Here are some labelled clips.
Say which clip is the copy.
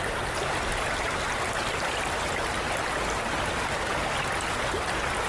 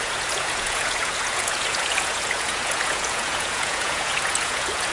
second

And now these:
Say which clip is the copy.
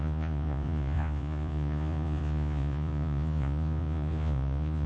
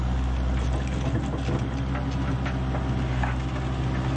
first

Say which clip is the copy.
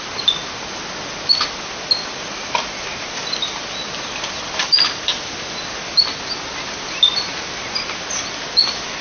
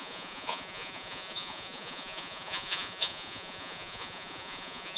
second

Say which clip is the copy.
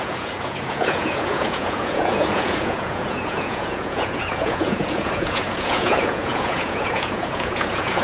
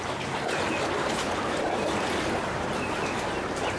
first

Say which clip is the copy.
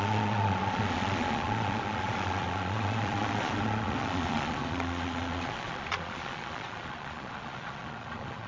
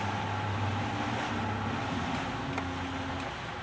first